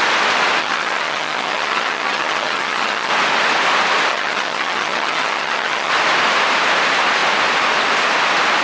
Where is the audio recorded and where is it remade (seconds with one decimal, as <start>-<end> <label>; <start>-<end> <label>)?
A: 0.0-0.6 recorded; 0.6-3.1 remade; 3.1-4.1 recorded; 4.1-5.9 remade; 5.9-8.6 recorded